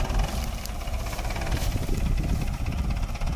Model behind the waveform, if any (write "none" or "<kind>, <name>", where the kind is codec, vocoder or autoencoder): vocoder, BigVGAN v2